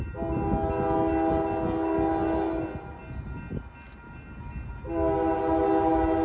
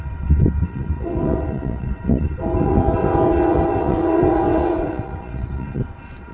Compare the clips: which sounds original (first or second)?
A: first